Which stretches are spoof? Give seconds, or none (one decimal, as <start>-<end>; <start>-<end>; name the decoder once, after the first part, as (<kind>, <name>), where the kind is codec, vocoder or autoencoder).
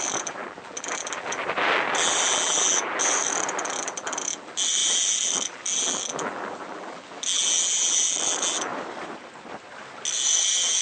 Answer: 0.0-8.7 (vocoder, BigVGAN v2)